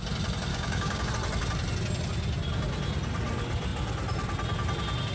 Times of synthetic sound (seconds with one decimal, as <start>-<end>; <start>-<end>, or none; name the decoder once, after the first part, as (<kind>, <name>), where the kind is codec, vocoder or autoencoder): 0.5-1.1 (codec, DAC)